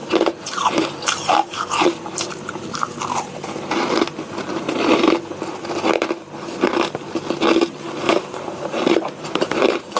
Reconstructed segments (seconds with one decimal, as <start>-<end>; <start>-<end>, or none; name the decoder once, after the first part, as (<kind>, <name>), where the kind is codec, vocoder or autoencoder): 0.0-2.9 (vocoder, BigVGAN v2); 8.1-10.0